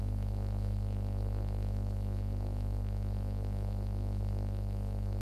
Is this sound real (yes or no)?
no